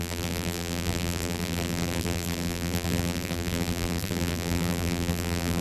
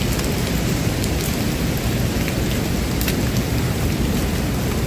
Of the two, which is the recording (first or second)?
second